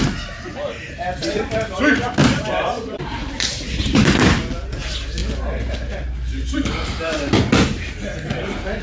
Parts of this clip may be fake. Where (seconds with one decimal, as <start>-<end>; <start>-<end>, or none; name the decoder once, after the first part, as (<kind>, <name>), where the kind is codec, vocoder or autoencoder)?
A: 1.2-1.8 (vocoder, BigVGAN v2); 2.2-4.3